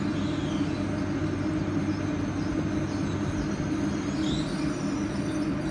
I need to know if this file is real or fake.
real